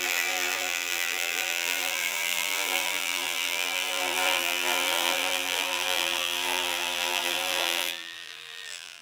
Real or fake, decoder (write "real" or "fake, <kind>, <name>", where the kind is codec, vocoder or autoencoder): fake, vocoder, BigVGAN v2